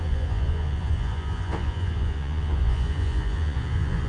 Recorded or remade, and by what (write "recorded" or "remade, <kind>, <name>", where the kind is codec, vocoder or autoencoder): remade, vocoder, Vocos